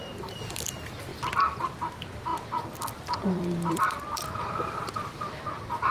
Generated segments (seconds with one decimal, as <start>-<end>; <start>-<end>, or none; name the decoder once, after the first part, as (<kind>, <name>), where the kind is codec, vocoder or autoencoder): 2.3-5.9 (vocoder, BigVGAN v2)